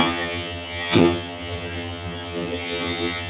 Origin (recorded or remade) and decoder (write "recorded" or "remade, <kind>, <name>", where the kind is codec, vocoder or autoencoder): remade, vocoder, HiFi-GAN